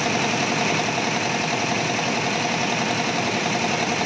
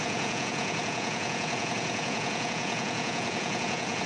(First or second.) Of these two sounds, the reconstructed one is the second